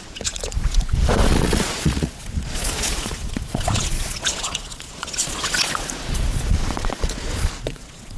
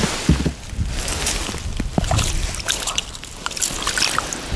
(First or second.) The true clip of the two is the second